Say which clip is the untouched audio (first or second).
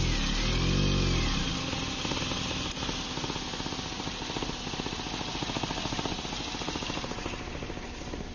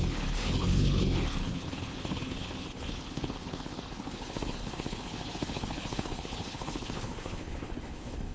first